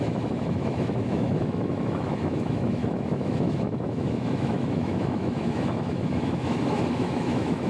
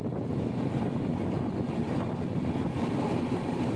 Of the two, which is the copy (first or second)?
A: first